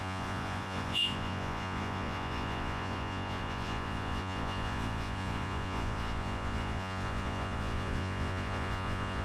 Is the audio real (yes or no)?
no